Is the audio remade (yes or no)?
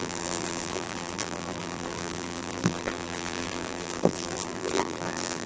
yes